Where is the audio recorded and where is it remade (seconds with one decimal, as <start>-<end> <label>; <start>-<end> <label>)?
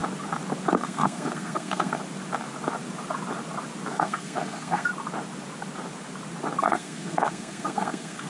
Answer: 0.0-0.7 recorded; 0.7-2.0 remade; 2.0-3.9 recorded; 3.9-4.9 remade; 4.9-6.6 recorded; 6.6-8.3 remade